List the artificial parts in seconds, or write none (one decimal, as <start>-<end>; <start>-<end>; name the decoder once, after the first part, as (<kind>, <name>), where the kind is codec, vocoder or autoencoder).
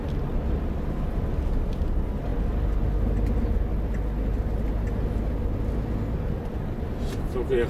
none